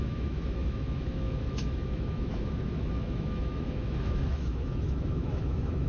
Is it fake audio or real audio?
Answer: fake